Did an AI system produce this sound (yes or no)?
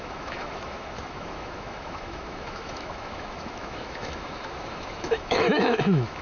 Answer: yes